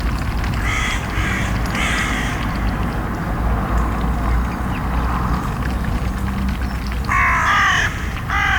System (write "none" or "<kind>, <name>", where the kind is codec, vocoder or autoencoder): none